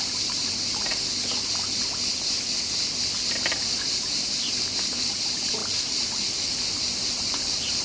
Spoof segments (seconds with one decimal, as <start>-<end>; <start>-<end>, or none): 0.0-0.9; 3.6-7.8